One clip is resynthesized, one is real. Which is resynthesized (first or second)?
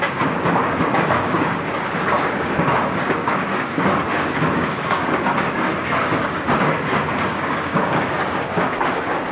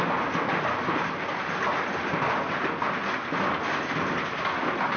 first